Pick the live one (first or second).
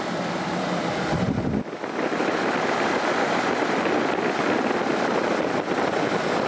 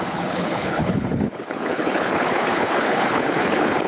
first